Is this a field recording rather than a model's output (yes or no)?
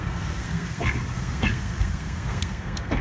no